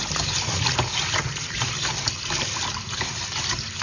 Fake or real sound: fake